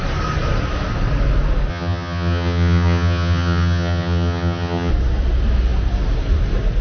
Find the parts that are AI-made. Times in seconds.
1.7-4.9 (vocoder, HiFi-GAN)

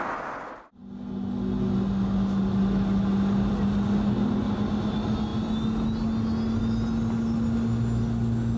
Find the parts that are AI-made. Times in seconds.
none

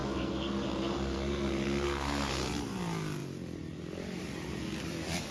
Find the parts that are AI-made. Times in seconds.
0.0-2.3 (codec, SNAC)

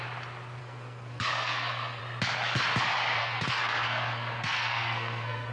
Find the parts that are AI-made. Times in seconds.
0.6-2.0 (codec, SNAC); 3.2-5.5

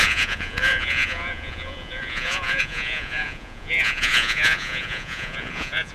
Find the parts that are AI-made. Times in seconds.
0.0-5.9 (vocoder, Vocos)